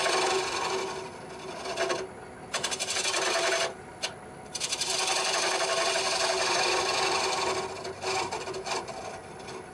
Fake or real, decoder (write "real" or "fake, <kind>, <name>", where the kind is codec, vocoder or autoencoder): real